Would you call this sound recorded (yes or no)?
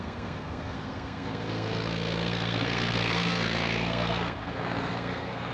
no